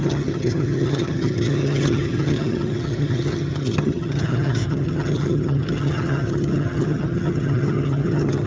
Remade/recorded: remade